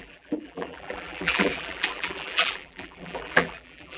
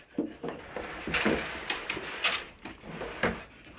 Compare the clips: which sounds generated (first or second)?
first